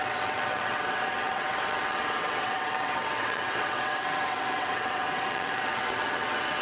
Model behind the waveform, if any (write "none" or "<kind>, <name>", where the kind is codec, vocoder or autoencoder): vocoder, WaveNeXt